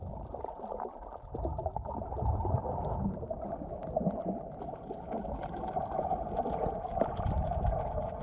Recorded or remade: recorded